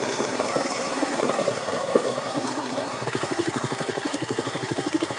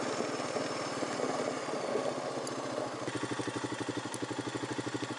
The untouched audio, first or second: second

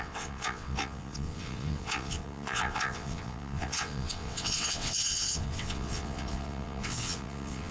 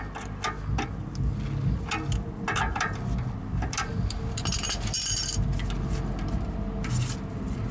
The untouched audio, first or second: second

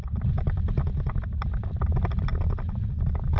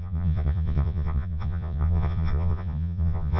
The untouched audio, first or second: first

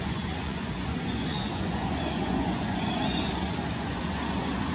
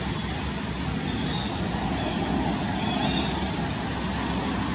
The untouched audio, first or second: second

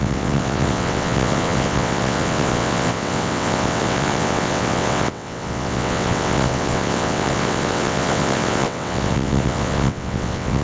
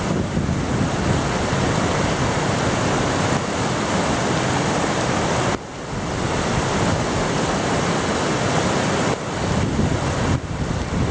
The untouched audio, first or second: second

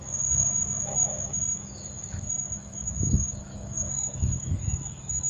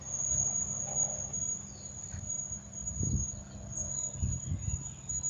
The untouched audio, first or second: second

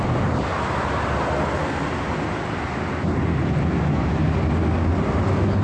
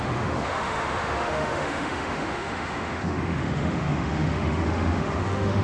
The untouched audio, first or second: first